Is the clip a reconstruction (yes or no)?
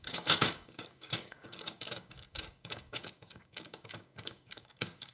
yes